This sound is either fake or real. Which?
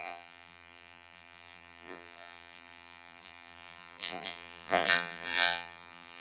fake